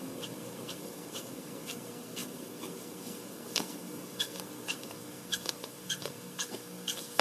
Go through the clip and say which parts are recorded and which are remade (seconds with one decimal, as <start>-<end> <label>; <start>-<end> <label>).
0.0-7.2 remade